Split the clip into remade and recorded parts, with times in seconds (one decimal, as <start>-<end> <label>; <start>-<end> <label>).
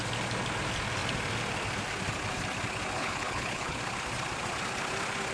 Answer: 0.0-3.0 recorded; 3.0-3.8 remade; 3.8-5.3 recorded